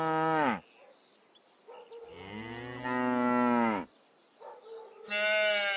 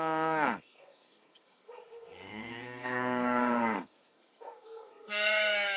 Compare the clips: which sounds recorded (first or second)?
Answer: first